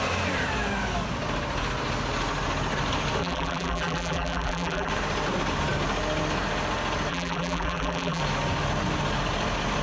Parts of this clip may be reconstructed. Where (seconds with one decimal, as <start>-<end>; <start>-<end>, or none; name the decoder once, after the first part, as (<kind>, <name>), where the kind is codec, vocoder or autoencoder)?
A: 3.2-4.9 (vocoder, BigVGAN v2); 7.1-8.2